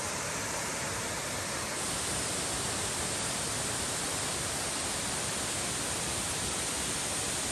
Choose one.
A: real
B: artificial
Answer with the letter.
B